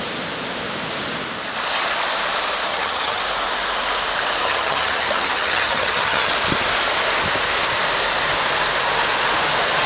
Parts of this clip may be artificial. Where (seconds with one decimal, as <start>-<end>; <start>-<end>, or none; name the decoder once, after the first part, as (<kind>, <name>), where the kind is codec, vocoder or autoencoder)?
2.7-3.2 (vocoder, HiFi-GAN); 4.4-6.3